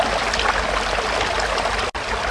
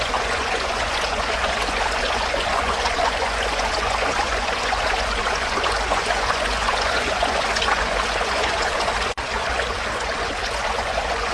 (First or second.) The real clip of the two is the first